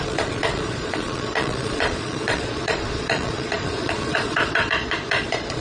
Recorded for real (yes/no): no